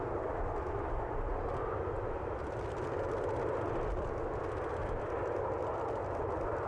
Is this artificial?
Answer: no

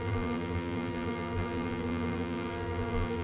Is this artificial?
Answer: yes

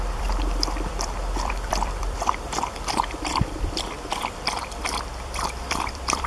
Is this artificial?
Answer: yes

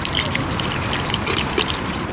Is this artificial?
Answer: yes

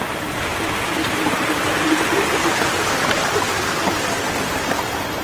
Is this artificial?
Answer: no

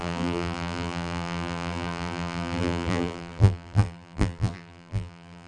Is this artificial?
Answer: yes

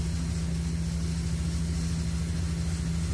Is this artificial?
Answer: no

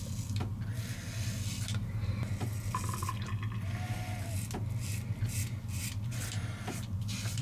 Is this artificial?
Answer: no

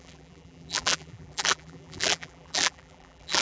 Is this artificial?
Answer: yes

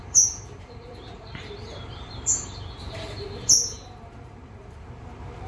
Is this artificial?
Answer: yes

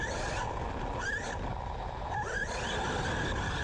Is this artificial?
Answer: no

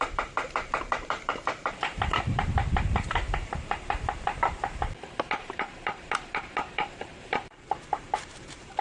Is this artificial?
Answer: yes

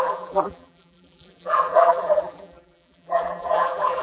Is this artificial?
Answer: yes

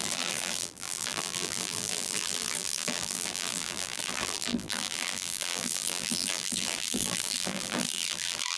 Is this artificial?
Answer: yes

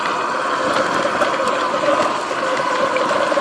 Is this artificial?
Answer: yes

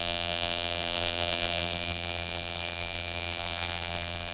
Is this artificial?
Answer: yes